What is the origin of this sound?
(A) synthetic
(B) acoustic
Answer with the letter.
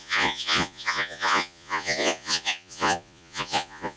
A